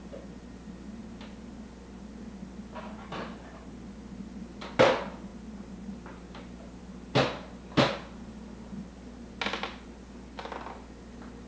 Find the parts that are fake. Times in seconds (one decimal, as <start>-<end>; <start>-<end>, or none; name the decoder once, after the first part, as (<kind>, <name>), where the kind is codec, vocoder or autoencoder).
none